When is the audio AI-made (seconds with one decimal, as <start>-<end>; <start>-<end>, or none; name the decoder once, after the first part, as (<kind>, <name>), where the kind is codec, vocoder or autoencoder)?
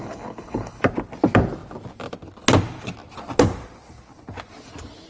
0.0-0.8 (codec, HILCodec)